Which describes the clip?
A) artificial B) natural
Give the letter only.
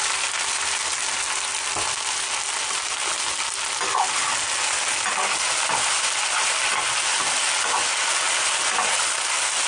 B